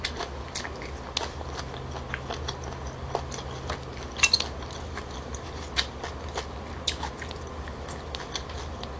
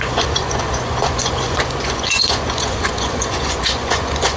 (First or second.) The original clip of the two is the first